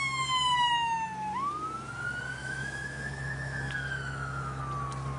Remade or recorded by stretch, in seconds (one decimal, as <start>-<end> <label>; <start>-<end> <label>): 0.0-2.4 recorded; 2.4-4.6 remade; 4.6-5.2 recorded